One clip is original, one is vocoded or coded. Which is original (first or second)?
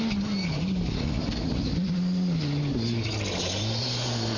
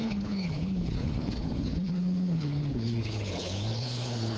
first